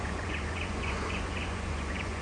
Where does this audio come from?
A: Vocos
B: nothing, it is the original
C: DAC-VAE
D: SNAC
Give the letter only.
A